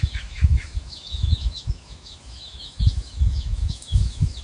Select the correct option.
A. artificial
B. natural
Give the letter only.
A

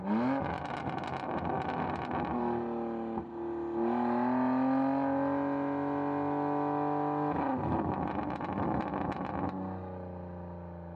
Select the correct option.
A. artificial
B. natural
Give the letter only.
B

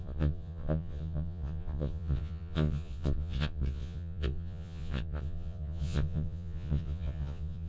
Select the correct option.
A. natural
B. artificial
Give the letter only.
B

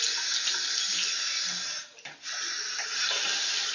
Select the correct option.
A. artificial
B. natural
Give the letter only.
B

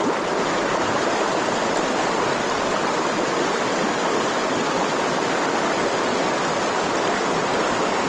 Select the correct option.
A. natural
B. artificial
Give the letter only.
A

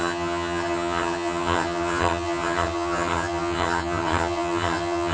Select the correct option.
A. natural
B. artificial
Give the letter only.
B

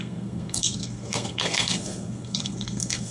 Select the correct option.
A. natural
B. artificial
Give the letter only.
B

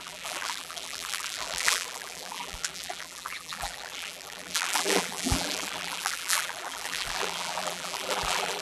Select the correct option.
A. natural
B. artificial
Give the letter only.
B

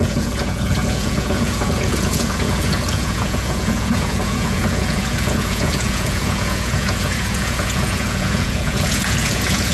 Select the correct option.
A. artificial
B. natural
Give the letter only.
A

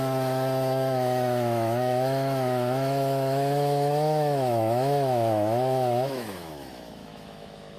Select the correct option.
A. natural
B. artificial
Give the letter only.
B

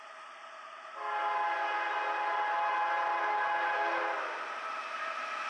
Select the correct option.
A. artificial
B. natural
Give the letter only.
B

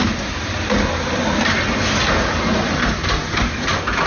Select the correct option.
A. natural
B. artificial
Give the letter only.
A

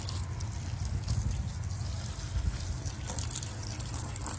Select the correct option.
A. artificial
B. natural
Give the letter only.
B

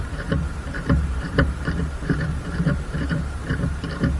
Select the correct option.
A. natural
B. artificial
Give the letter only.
B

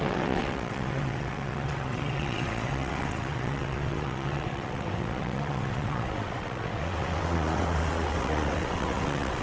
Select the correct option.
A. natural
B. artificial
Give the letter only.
B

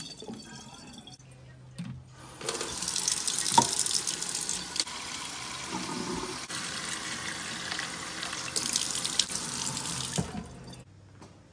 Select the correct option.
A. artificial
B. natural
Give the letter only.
B